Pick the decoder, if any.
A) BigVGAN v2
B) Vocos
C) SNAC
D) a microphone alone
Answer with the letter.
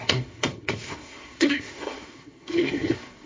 C